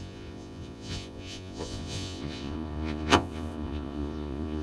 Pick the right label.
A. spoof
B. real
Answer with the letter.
A